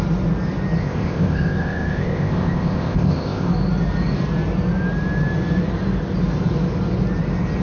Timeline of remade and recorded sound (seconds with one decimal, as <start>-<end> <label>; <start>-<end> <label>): 0.0-0.8 recorded; 0.8-3.5 remade; 3.5-7.6 recorded